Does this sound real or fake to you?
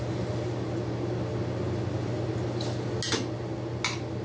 real